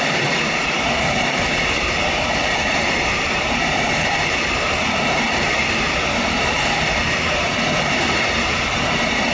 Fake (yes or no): yes